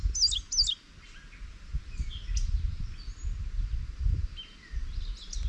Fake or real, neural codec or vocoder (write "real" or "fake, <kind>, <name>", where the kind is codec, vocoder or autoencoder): real